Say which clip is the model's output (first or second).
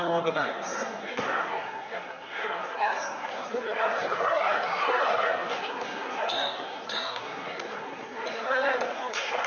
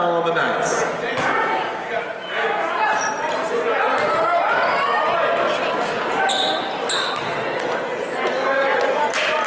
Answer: first